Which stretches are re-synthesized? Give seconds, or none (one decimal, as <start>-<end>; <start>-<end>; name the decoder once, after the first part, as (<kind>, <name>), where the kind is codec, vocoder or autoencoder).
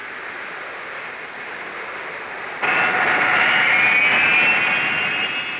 none